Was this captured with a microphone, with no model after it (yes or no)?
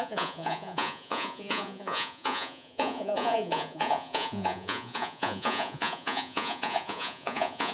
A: no